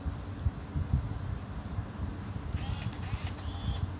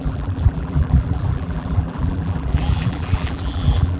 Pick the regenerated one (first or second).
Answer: second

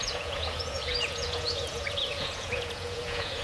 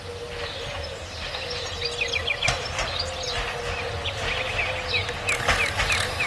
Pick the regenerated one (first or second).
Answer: first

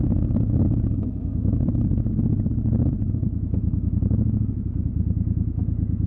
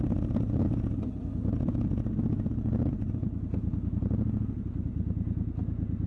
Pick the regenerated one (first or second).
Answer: first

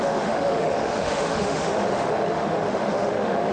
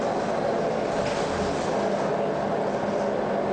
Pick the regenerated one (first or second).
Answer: first